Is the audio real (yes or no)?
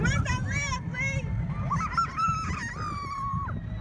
yes